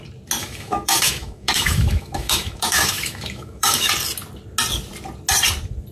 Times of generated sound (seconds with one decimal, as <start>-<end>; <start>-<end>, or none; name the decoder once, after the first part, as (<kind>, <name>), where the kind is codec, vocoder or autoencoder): 0.4-3.9 (autoencoder, DAC-VAE)